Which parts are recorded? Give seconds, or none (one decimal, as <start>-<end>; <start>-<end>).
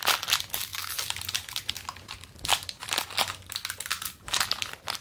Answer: 0.0-5.0